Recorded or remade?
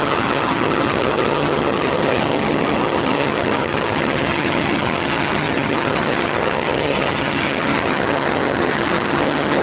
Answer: remade